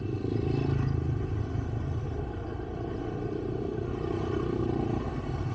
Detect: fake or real real